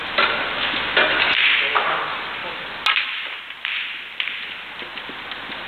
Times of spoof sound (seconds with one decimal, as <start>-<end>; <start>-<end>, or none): none